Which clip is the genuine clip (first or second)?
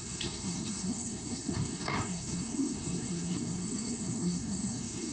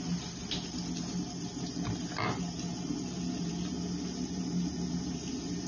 second